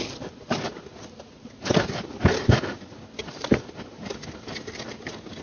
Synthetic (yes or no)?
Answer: no